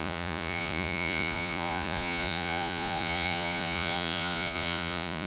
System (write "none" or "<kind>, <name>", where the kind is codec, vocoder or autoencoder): vocoder, Vocos